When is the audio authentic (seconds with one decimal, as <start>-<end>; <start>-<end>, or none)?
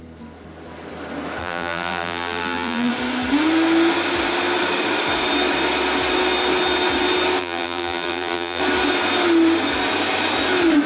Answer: 0.0-1.4; 2.9-7.4; 8.6-10.9